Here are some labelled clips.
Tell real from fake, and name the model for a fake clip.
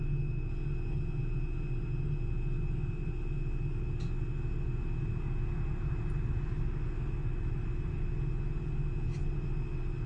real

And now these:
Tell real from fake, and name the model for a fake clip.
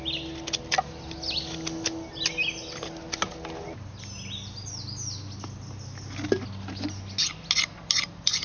real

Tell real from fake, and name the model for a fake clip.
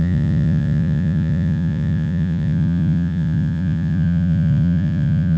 fake, vocoder, Vocos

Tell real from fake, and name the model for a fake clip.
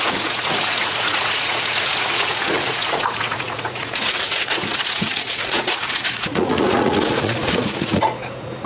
fake, vocoder, Vocos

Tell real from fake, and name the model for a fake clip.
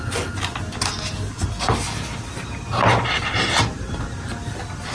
real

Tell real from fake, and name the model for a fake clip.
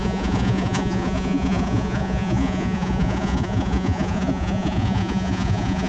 fake, vocoder, Vocos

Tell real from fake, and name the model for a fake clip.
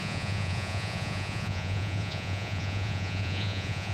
fake, vocoder, Vocos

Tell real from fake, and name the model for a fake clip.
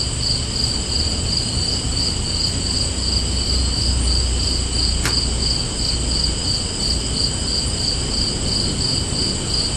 real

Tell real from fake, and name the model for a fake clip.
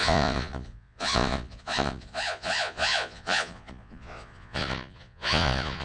fake, vocoder, Vocos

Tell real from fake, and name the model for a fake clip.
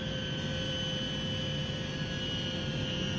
real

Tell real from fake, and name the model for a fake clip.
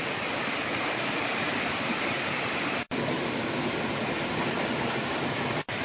real